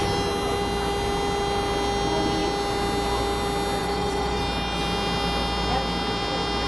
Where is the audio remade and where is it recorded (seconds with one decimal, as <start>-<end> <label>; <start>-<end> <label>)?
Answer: 0.0-3.8 recorded; 3.8-4.4 remade; 4.4-6.7 recorded